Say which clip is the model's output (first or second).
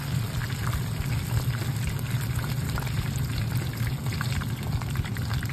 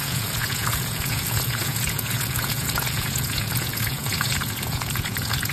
second